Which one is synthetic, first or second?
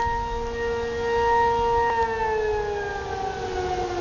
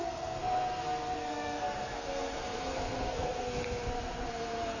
second